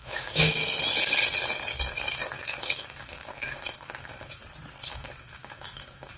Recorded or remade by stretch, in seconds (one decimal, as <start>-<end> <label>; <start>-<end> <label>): 0.0-0.6 remade; 0.6-2.1 recorded; 2.1-4.4 remade; 4.4-4.9 recorded; 4.9-6.2 remade